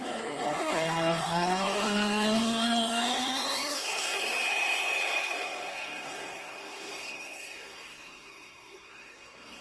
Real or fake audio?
fake